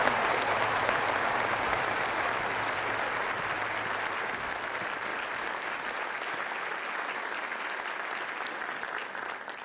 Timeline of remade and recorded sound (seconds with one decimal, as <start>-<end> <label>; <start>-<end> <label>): 0.0-9.6 recorded